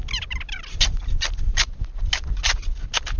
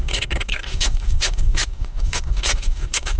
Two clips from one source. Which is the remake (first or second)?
second